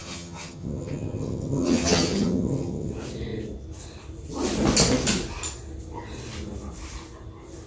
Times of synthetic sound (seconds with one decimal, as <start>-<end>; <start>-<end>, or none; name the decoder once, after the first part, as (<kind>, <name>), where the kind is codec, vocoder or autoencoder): 0.0-2.9 (vocoder, HiFi-GAN)